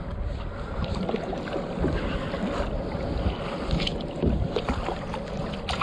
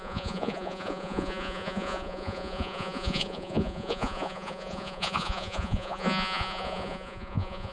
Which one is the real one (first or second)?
first